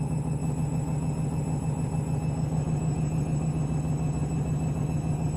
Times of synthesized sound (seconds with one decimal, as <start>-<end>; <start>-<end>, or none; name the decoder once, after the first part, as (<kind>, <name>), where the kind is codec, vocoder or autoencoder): none